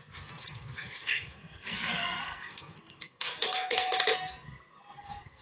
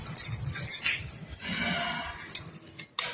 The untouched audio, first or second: second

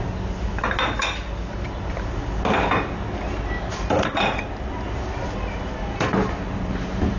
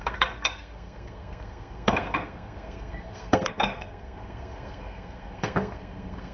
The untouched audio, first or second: first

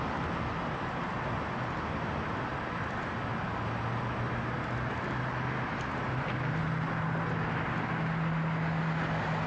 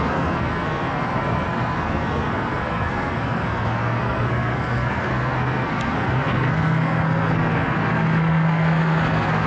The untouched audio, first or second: first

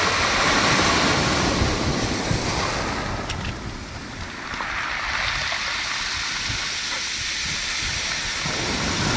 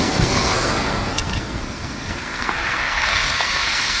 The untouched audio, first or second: first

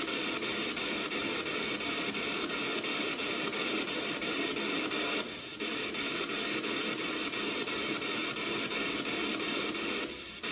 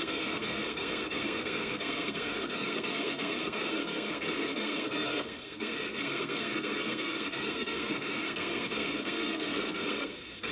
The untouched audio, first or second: first